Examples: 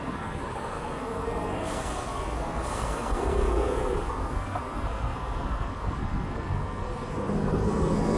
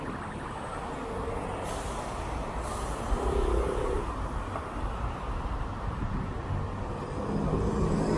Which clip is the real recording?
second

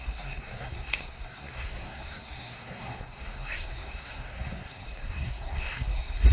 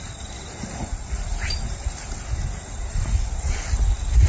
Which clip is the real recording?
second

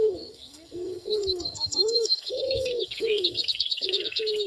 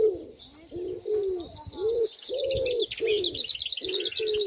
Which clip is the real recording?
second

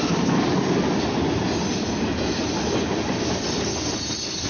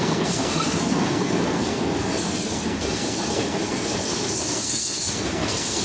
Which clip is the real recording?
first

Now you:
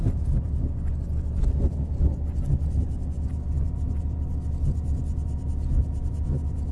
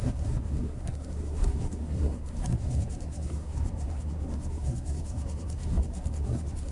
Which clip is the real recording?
first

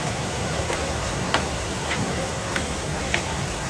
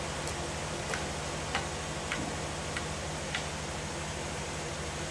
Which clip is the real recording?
second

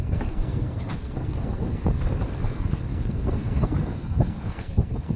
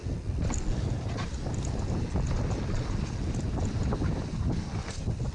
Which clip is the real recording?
second